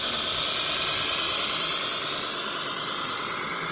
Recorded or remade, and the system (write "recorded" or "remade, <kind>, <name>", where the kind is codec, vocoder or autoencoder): recorded